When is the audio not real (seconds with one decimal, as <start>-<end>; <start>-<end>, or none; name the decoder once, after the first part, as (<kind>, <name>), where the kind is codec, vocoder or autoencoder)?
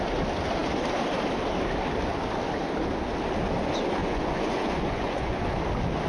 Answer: 4.0-5.6 (vocoder, Vocos)